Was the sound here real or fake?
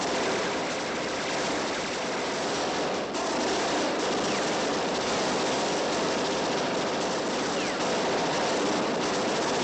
real